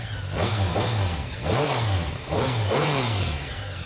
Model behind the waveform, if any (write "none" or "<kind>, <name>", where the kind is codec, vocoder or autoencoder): codec, SNAC